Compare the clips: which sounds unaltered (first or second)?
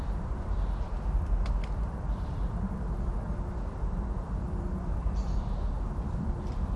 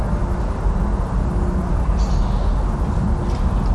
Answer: second